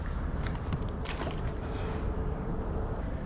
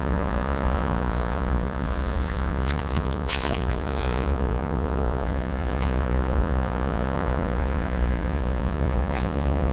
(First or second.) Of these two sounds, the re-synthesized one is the second